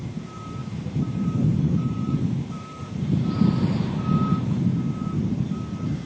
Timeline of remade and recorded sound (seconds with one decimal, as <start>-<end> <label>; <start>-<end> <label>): 0.0-6.1 remade

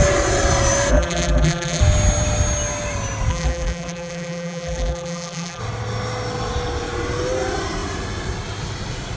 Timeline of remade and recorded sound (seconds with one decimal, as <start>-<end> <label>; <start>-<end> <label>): 0.0-0.9 recorded; 0.9-1.8 remade; 1.8-3.3 recorded; 3.3-5.6 remade; 5.6-9.2 recorded

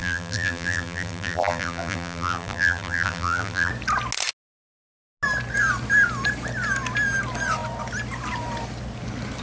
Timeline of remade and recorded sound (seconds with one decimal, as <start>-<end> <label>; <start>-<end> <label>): 0.0-3.7 remade; 3.7-9.4 recorded

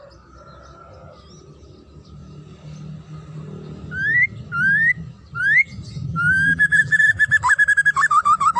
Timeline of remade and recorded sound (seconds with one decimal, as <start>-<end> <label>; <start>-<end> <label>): 0.0-6.1 recorded; 6.1-7.3 remade; 7.3-8.6 recorded

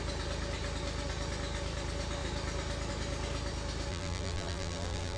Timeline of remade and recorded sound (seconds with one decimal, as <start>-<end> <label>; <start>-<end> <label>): 0.0-3.9 recorded; 3.9-5.2 remade

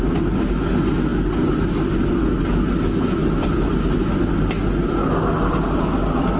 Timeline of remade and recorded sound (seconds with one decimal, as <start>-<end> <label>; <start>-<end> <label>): 0.0-6.4 recorded

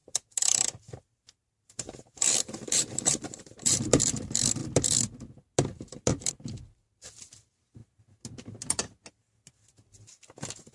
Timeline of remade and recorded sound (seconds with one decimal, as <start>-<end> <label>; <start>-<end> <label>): 0.0-4.0 remade; 4.0-10.7 recorded

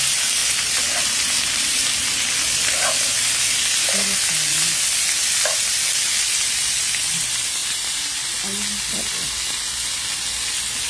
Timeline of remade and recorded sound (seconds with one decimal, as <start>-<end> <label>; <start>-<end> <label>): 0.0-0.4 recorded; 0.4-4.8 remade; 4.8-7.6 recorded; 7.6-8.8 remade; 8.8-10.9 recorded